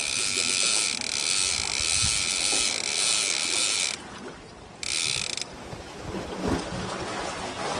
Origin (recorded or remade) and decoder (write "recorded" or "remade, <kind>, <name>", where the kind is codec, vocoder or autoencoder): recorded